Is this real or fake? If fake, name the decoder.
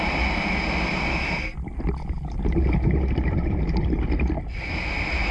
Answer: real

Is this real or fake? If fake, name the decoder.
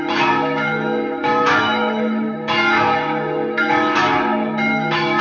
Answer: fake, autoencoder, DAC-VAE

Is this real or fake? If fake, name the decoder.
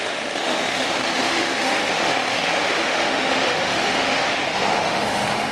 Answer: fake, autoencoder, DAC-VAE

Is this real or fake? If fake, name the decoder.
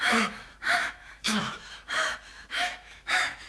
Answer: fake, autoencoder, DAC-VAE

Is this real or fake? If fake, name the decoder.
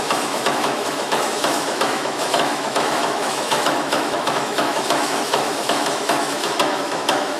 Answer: fake, autoencoder, DAC-VAE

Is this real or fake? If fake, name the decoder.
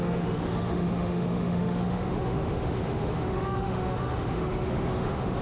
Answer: fake, autoencoder, DAC-VAE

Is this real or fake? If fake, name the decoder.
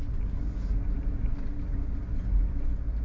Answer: real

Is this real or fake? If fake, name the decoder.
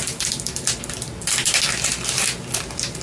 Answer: real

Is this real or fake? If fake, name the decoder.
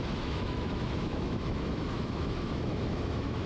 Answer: fake, autoencoder, DAC-VAE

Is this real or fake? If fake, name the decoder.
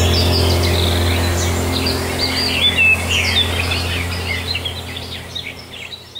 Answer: real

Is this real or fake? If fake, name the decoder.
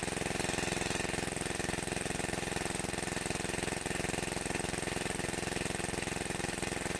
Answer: real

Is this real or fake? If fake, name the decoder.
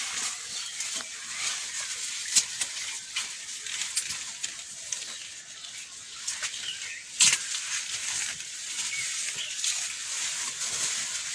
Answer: real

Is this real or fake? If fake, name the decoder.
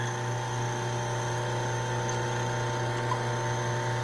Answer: real